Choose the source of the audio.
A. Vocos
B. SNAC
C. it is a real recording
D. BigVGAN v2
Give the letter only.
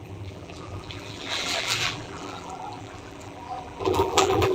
D